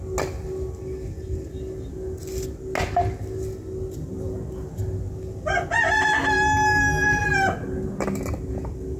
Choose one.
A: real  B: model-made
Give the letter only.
A